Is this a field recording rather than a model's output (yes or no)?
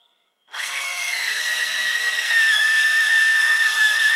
no